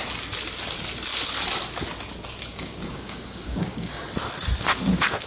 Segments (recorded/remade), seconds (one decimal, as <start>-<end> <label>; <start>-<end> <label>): 0.0-2.5 recorded; 2.5-4.0 remade; 4.0-5.3 recorded